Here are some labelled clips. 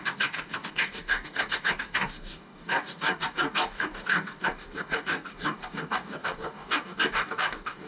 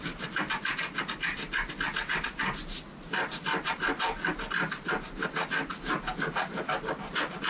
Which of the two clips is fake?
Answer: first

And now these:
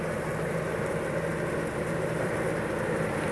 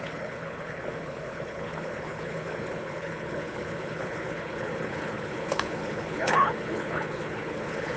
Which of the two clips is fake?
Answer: second